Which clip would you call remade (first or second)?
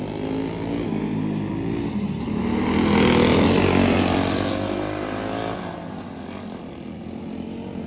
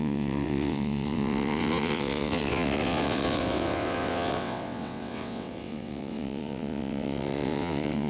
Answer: second